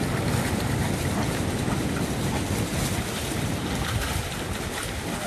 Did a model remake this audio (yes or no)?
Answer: no